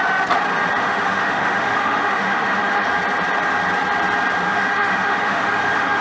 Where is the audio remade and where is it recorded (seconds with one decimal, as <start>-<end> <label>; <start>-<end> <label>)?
0.0-0.8 recorded; 0.8-2.9 remade; 2.9-4.5 recorded; 4.5-6.0 remade